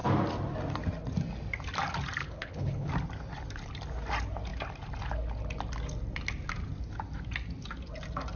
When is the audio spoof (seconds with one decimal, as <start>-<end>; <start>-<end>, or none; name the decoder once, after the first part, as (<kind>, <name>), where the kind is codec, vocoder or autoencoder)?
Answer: 2.2-2.9 (codec, HILCodec)